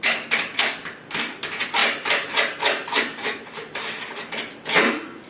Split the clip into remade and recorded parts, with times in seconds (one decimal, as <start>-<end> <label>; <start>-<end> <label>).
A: 0.0-1.8 recorded; 1.8-5.3 remade